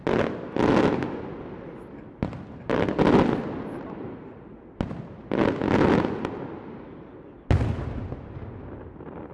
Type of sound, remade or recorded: recorded